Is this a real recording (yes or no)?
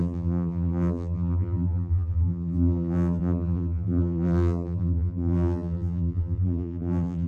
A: no